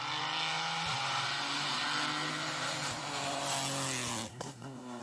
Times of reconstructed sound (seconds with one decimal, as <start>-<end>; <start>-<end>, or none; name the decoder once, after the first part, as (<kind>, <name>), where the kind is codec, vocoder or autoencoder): 4.3-5.0 (codec, SNAC)